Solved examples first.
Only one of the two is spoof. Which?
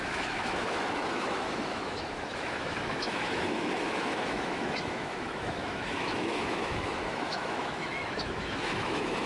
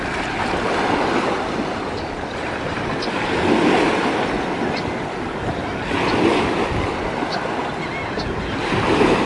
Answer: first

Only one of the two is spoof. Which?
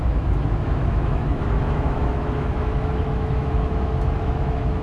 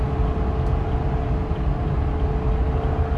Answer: first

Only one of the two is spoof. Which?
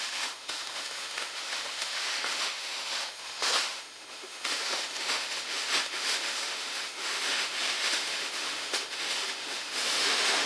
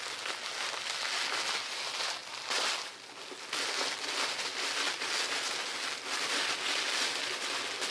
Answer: first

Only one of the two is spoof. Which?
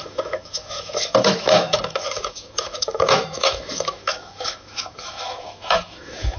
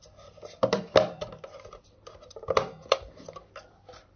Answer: first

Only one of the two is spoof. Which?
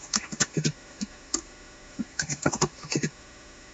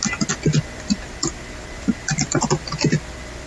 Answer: first